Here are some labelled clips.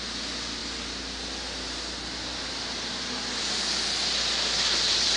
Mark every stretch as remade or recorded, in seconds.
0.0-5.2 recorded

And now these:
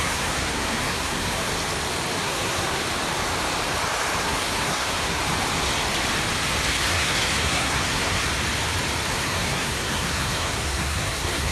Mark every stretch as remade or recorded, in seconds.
0.0-1.5 remade; 1.5-2.2 recorded; 2.2-2.8 remade; 2.8-4.2 recorded; 4.2-5.2 remade; 5.2-6.7 recorded; 6.7-8.3 remade; 8.3-9.1 recorded; 9.1-11.5 remade

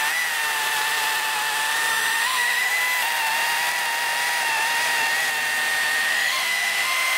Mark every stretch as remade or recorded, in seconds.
0.0-1.9 recorded; 1.9-2.7 remade; 2.7-6.1 recorded; 6.1-7.2 remade